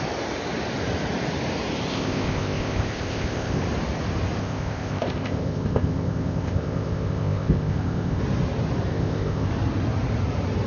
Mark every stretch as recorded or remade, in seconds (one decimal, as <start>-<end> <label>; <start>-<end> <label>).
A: 0.0-1.9 recorded; 1.9-3.6 remade; 3.6-4.4 recorded; 4.4-8.2 remade; 8.2-8.9 recorded; 8.9-9.5 remade; 9.5-10.7 recorded